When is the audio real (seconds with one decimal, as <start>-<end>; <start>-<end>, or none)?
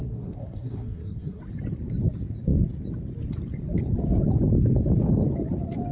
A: 1.4-5.9